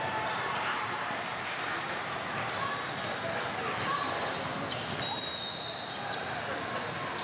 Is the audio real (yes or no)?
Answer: yes